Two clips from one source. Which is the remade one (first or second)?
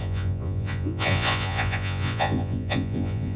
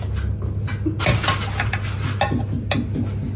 first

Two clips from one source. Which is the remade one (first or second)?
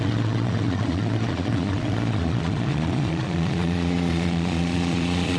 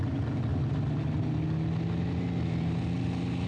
first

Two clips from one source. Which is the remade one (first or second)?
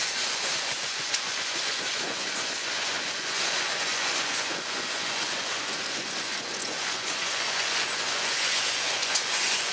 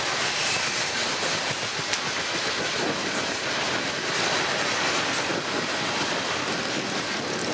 first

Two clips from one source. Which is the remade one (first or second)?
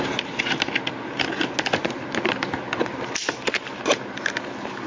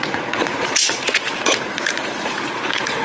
second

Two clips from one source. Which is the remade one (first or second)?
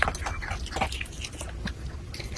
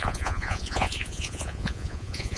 second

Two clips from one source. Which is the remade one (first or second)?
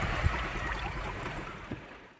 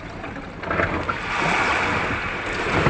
first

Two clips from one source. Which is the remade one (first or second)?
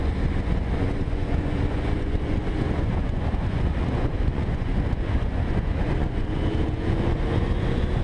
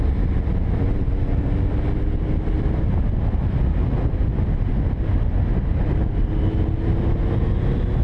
first